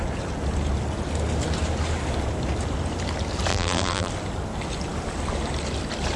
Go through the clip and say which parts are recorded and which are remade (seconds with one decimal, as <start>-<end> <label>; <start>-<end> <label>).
0.0-3.5 recorded; 3.5-4.1 remade; 4.1-6.2 recorded